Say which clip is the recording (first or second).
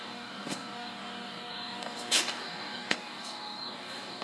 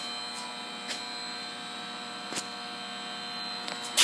second